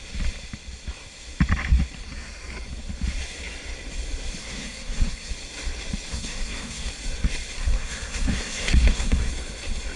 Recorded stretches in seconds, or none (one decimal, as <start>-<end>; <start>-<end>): 0.0-4.4; 5.3-6.1; 6.9-7.6; 9.3-10.0